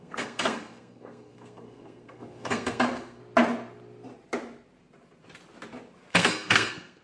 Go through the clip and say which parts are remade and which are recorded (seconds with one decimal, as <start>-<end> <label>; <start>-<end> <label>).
0.0-3.2 remade; 3.2-6.1 recorded; 6.1-7.0 remade